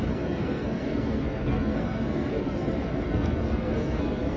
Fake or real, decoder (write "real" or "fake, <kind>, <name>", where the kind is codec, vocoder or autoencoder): fake, codec, SNAC